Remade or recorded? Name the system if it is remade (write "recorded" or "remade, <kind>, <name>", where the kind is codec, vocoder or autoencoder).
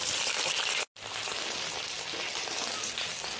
recorded